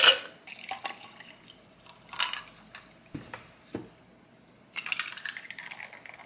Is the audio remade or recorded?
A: recorded